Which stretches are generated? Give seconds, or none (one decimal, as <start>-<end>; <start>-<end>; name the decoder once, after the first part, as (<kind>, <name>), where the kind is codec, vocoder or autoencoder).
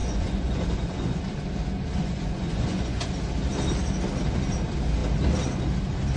0.0-1.2 (vocoder, Vocos); 2.0-3.1